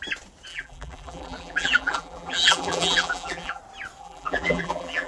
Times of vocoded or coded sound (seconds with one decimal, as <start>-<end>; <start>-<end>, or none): 0.5-3.6; 4.0-5.1